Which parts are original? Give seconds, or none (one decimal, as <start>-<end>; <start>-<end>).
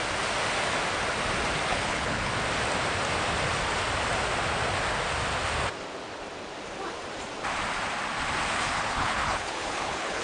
0.0-1.7; 2.3-8.5